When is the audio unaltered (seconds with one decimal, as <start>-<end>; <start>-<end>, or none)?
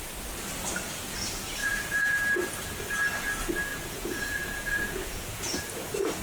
0.0-1.6; 2.3-3.7; 5.6-6.2